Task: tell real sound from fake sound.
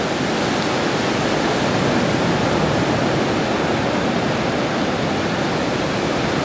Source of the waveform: real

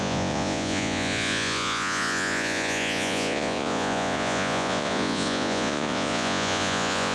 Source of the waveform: fake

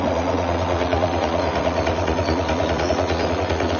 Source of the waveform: fake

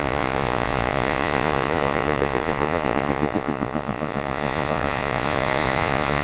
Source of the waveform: fake